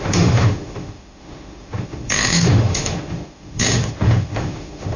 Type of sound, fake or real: fake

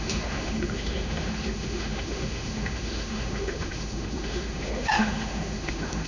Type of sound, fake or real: fake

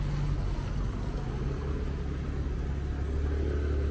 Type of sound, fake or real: real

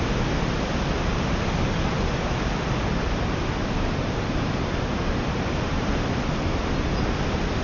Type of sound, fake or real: real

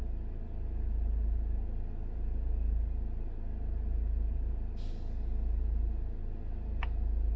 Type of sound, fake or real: real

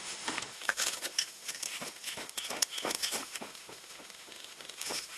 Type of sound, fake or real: fake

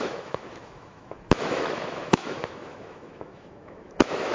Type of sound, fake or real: fake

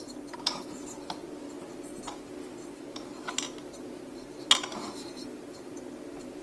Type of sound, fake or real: real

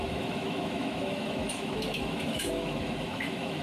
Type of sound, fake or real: fake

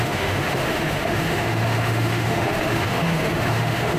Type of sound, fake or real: fake